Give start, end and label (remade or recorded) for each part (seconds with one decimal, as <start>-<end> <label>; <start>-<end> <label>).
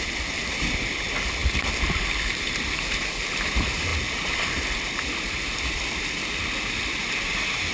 0.0-7.7 recorded